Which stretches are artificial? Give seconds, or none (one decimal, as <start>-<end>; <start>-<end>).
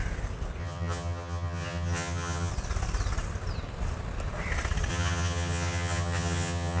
0.6-2.5; 4.9-6.8